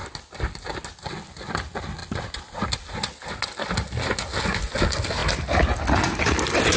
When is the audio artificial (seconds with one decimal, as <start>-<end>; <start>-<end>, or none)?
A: none

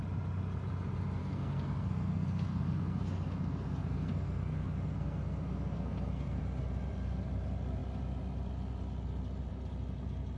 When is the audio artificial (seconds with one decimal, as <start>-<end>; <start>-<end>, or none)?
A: 1.2-6.4

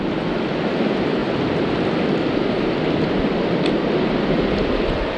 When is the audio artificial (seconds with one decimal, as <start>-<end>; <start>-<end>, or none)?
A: none

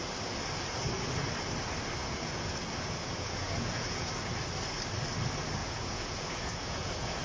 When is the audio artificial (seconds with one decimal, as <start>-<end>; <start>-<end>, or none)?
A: 2.0-4.1; 5.6-7.2

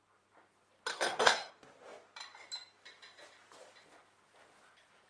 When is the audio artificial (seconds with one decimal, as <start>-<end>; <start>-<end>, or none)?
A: 0.9-1.5

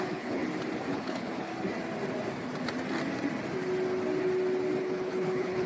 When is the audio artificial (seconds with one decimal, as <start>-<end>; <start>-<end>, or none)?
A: 0.0-0.4; 0.9-1.5; 4.8-5.7